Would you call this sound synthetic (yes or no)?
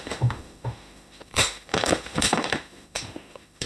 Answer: yes